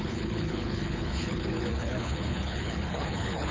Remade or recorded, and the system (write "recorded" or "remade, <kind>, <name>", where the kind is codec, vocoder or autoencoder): remade, codec, HILCodec